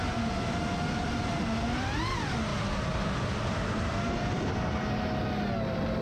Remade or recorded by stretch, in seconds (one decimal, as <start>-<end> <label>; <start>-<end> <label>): 0.0-2.5 recorded; 2.5-3.5 remade; 3.5-6.0 recorded